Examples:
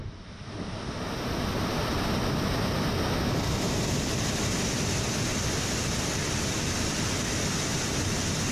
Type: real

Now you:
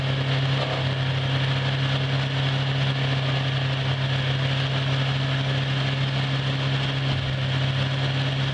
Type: real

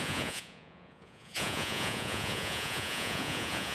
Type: fake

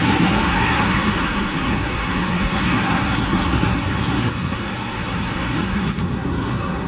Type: fake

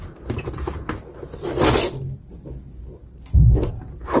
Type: real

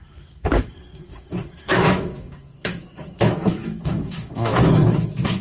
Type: fake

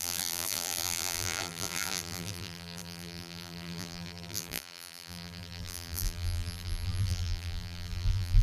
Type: fake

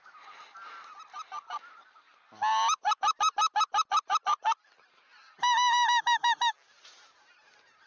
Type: real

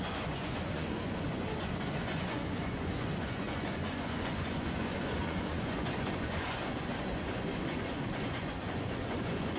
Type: fake